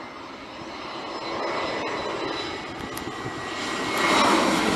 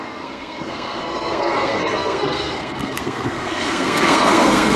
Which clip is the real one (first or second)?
first